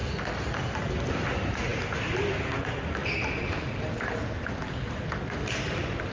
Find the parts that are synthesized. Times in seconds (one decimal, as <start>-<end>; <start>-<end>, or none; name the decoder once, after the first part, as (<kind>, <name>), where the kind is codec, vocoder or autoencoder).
none